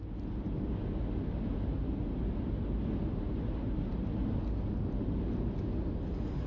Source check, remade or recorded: recorded